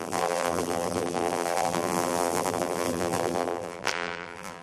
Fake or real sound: fake